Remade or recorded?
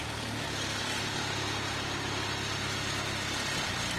recorded